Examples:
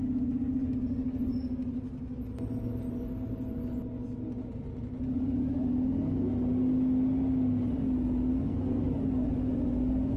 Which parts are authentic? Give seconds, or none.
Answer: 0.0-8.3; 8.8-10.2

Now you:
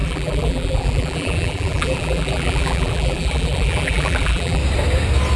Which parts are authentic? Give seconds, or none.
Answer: 4.6-5.4